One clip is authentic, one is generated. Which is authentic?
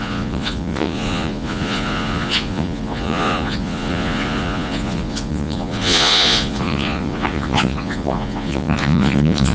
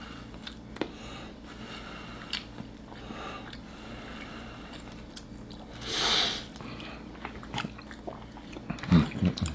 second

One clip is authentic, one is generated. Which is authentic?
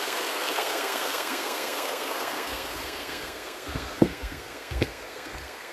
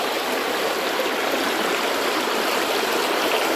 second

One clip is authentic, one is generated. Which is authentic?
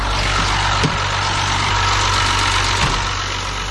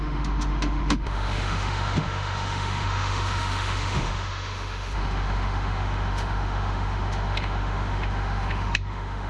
first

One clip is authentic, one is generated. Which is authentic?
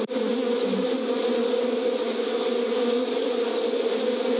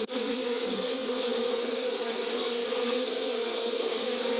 first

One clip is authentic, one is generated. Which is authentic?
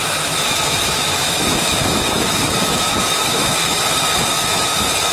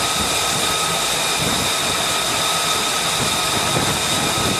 second